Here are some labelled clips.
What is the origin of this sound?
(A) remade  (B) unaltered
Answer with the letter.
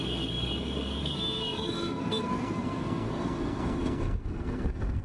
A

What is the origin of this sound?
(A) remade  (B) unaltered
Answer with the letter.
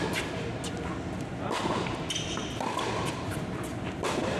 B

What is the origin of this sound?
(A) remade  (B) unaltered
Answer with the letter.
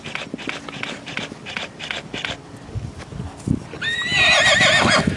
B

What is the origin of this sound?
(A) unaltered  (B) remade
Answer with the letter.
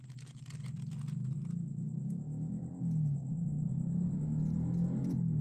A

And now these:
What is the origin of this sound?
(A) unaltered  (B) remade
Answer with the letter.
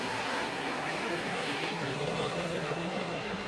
B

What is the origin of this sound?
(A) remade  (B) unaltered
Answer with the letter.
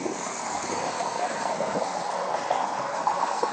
A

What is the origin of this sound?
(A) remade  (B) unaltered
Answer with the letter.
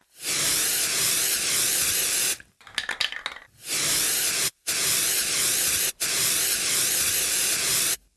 B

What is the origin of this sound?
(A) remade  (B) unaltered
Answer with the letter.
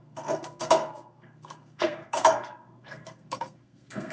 A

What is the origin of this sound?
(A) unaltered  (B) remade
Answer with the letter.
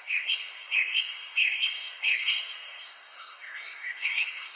B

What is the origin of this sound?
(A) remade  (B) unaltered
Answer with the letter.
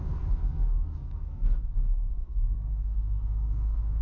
A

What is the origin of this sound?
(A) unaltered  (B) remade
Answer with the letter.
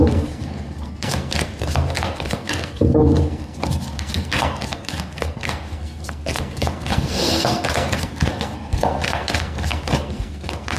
B